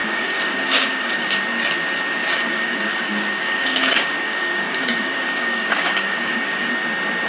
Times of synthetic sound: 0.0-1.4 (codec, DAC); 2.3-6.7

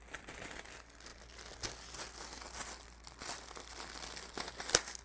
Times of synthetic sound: none

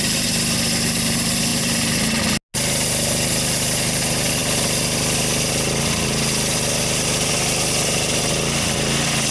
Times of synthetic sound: none

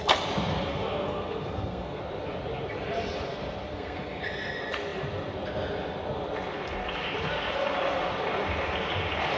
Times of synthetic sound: 0.7-2.0 (codec, SNAC); 3.7-4.2

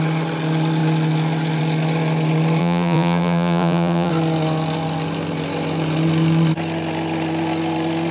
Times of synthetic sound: 2.6-4.1 (vocoder, BigVGAN v2)